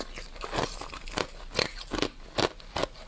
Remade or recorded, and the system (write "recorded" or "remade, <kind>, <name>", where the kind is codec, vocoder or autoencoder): recorded